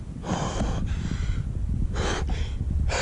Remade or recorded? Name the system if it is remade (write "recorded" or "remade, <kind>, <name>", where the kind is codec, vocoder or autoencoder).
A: recorded